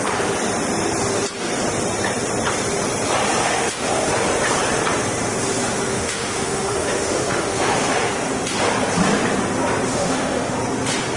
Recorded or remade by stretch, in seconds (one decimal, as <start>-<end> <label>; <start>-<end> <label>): 0.0-3.4 recorded; 3.4-4.1 remade; 4.1-5.9 recorded; 5.9-8.1 remade; 8.1-9.9 recorded; 9.9-10.6 remade; 10.6-11.2 recorded